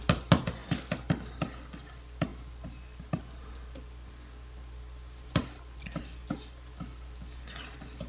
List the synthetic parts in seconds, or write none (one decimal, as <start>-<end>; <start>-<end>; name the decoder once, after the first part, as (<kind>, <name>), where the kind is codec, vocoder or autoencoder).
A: 5.4-6.0 (vocoder, BigVGAN v2)